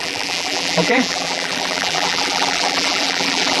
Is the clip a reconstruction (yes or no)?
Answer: yes